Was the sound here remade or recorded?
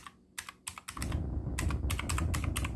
recorded